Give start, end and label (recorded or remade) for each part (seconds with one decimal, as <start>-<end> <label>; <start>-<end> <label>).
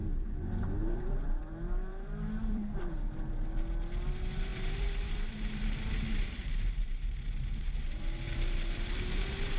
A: 0.0-9.6 remade